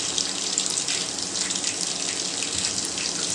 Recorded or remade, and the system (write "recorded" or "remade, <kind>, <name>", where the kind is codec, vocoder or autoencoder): recorded